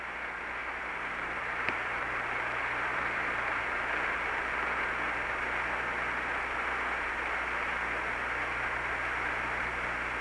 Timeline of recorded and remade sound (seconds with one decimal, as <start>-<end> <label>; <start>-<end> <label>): 0.0-0.6 recorded; 0.6-2.4 remade; 2.4-2.9 recorded; 2.9-3.6 remade; 3.6-10.2 recorded